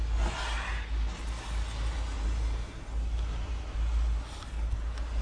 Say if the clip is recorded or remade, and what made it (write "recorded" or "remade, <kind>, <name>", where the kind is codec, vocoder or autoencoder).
recorded